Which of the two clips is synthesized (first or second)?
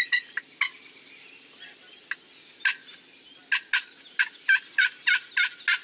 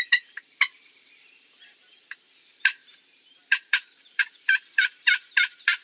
second